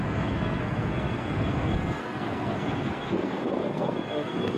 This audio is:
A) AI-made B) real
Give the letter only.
A